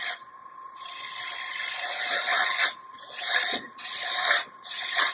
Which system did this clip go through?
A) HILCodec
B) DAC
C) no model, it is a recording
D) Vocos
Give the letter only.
D